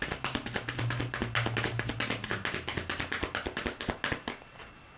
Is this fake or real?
real